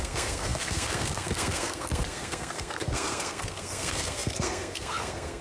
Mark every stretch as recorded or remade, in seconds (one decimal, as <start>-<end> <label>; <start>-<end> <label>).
0.0-5.4 remade